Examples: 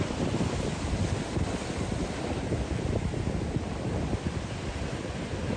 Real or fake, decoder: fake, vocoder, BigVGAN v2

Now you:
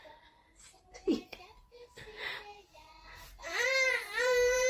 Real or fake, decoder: fake, vocoder, BigVGAN v2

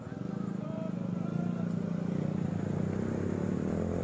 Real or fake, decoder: real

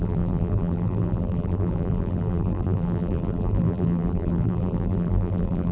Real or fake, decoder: fake, vocoder, BigVGAN v2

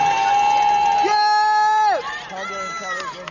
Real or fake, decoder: real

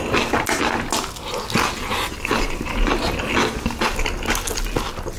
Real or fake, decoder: real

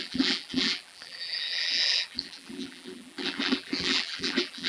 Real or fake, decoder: fake, vocoder, BigVGAN v2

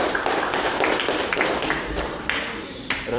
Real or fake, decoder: fake, vocoder, BigVGAN v2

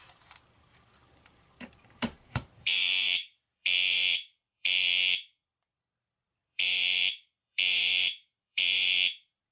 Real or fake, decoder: fake, vocoder, BigVGAN v2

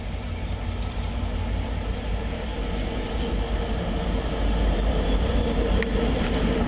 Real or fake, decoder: fake, vocoder, BigVGAN v2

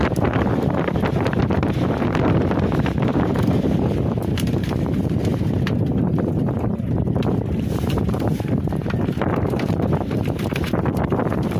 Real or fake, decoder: fake, vocoder, BigVGAN v2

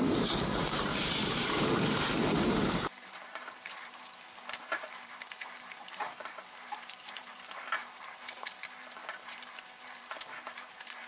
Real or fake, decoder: fake, vocoder, BigVGAN v2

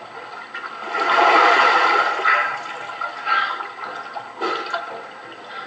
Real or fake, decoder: real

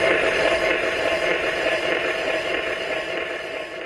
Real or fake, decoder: fake, vocoder, BigVGAN v2